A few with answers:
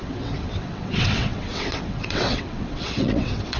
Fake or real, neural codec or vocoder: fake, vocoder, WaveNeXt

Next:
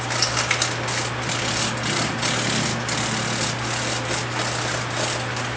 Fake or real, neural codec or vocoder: real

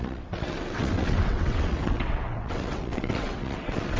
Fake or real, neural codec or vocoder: fake, vocoder, WaveNeXt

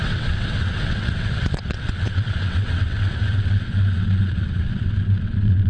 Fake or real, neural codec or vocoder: fake, vocoder, WaveNeXt